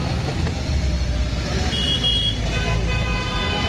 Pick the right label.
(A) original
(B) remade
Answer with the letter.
A